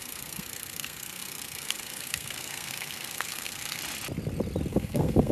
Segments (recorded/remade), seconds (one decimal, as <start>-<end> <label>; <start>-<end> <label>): 0.0-3.8 remade; 3.8-4.7 recorded; 4.7-5.3 remade